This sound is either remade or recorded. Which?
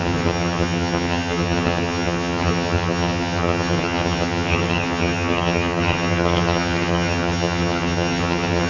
remade